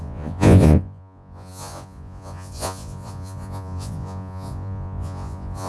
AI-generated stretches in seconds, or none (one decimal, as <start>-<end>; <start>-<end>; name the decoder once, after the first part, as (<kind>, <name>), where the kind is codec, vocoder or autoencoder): 0.0-5.7 (vocoder, Vocos)